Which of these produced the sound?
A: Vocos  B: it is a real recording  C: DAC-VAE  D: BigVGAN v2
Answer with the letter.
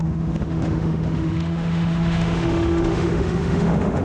C